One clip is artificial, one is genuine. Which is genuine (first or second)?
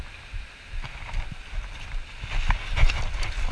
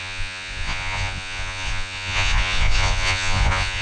first